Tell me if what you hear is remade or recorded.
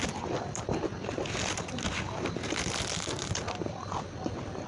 recorded